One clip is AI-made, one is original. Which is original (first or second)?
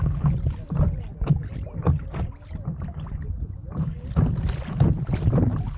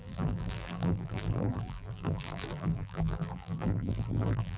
first